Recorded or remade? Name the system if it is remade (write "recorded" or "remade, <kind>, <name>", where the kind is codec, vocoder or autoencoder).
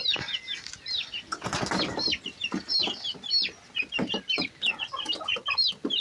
recorded